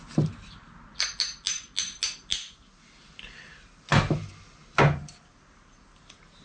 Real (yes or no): yes